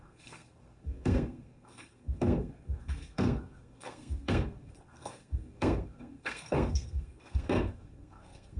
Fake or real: fake